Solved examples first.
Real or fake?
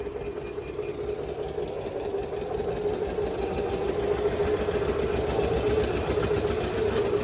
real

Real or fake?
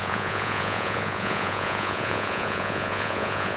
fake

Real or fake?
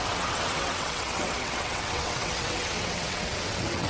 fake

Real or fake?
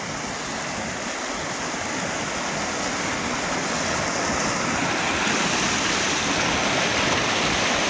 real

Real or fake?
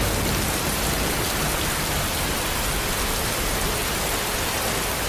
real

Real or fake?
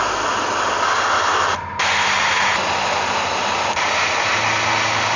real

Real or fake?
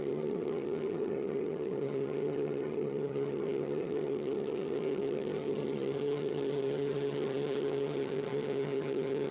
fake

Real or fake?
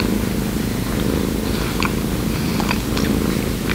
real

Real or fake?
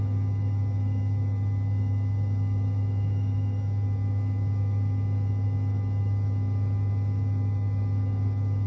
fake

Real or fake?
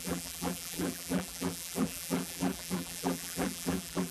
fake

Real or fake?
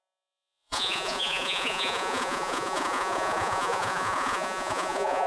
fake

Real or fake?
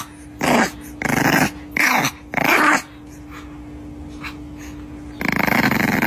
real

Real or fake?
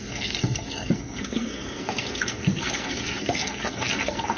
fake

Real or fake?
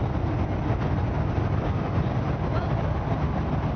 real